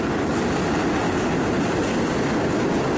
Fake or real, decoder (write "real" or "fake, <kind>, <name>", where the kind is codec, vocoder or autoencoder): real